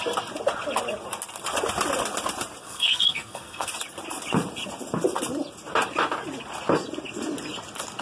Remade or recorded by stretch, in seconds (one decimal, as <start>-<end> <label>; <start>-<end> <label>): 0.0-2.6 recorded; 2.6-3.7 remade; 3.7-8.0 recorded